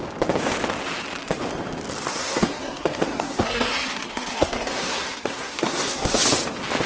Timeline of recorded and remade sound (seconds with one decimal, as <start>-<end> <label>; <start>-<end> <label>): 0.0-2.1 recorded; 2.1-6.2 remade; 6.2-6.9 recorded